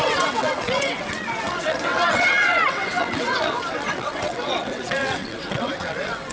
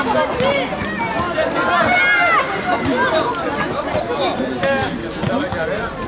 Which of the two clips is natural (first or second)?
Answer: second